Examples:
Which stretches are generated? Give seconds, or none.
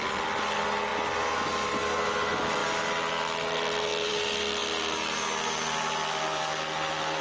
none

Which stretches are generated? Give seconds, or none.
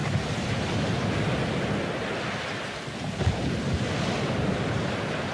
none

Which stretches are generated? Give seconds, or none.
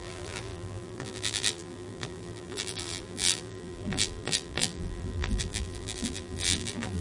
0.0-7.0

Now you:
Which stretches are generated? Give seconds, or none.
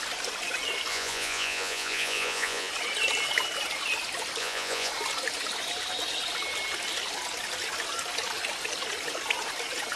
0.9-2.7; 4.4-4.9